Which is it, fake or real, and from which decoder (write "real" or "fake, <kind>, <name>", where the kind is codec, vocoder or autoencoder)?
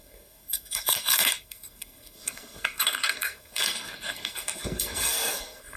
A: fake, codec, SNAC